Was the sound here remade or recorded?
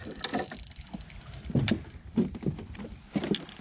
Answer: recorded